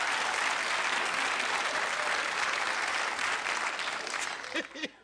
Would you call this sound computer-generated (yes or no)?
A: no